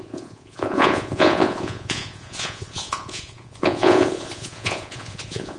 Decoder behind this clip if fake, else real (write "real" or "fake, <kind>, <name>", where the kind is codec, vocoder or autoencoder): fake, vocoder, Vocos